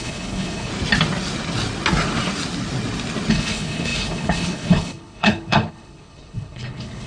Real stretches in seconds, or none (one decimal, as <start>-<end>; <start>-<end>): 0.7-3.3